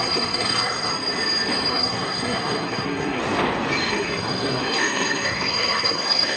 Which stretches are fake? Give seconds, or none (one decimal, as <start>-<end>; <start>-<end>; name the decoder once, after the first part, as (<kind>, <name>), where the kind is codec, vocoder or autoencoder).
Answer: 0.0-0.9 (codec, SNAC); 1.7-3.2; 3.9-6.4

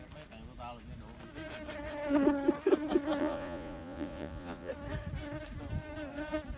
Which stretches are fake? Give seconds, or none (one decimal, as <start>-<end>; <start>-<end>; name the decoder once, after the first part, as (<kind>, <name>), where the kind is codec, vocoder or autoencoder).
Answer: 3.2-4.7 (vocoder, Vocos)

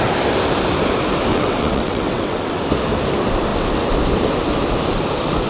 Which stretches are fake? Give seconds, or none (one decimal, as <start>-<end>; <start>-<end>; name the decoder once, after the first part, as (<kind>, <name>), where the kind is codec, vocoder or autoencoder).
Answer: 1.3-2.6 (vocoder, WaveNeXt)

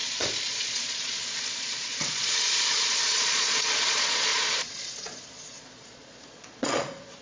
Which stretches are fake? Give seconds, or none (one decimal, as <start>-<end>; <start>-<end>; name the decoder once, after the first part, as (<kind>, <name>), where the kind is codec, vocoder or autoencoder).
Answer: 0.0-7.2 (vocoder, Vocos)

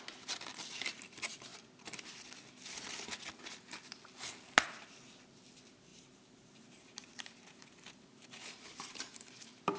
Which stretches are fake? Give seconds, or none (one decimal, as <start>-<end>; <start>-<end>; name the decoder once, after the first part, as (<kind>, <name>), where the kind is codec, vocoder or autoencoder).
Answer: 5.9-9.8 (vocoder, BigVGAN v2)

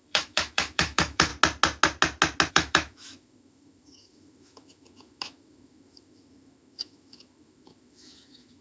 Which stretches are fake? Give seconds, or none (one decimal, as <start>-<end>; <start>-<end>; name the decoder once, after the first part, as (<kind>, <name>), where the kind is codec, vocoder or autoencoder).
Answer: 0.0-1.3 (autoencoder, DAC-VAE); 2.5-8.6